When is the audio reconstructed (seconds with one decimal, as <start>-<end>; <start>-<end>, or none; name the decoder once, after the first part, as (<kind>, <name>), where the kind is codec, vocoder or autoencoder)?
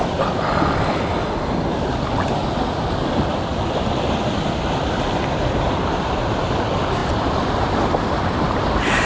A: none